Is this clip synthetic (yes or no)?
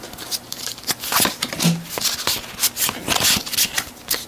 no